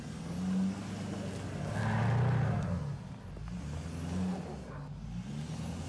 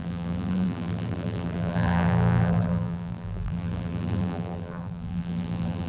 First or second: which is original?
first